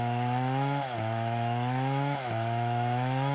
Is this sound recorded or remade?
remade